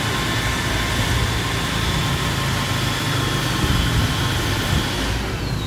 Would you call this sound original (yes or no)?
yes